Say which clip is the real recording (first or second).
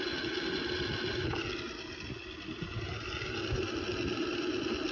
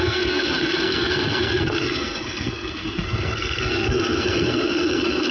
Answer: first